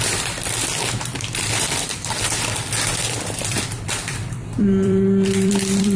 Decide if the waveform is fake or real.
fake